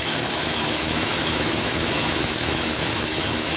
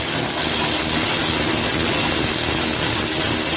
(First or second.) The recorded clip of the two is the second